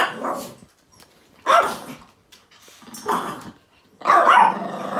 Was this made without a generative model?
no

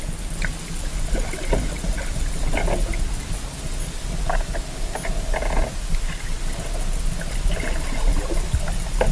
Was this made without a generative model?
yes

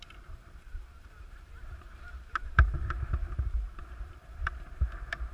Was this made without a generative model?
no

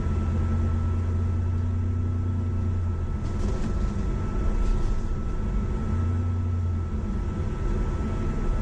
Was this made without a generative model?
yes